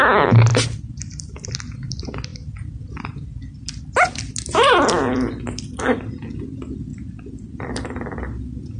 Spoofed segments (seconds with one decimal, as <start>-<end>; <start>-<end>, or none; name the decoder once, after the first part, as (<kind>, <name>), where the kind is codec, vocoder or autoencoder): 0.5-1.5 (vocoder, BigVGAN v2); 6.9-7.8